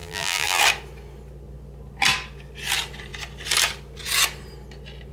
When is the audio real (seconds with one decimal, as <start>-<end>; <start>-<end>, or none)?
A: 0.6-5.1